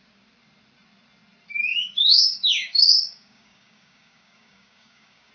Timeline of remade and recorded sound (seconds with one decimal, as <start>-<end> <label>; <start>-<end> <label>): 0.0-1.7 recorded; 1.7-5.3 remade